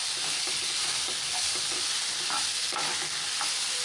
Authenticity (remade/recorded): recorded